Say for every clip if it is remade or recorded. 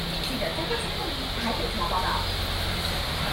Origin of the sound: recorded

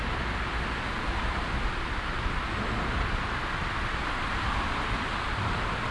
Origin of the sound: recorded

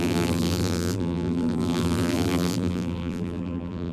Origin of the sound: remade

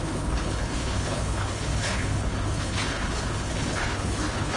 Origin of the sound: remade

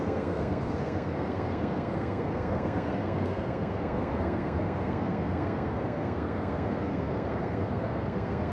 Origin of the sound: remade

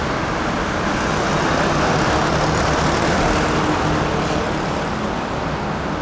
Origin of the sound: recorded